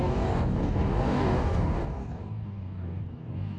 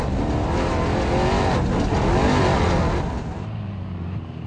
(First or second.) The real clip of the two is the second